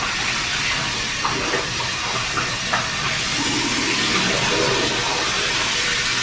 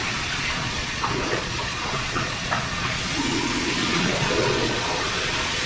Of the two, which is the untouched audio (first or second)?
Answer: first